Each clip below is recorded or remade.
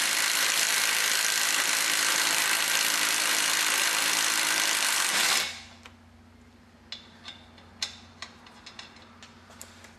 recorded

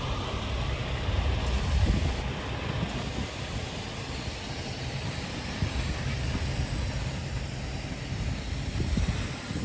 recorded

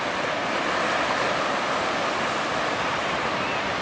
recorded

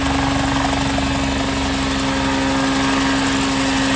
recorded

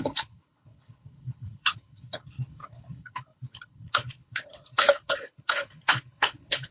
remade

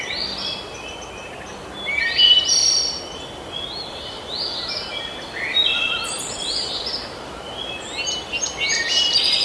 recorded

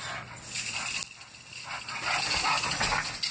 recorded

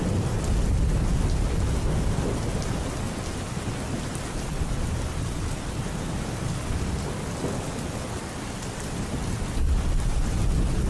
recorded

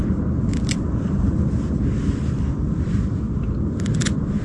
recorded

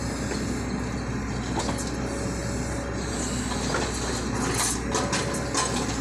recorded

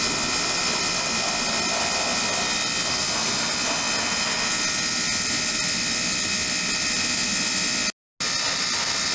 recorded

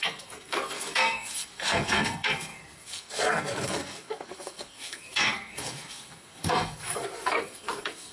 remade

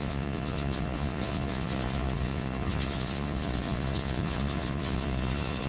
remade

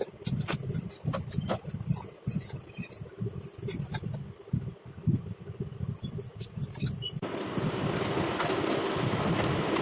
recorded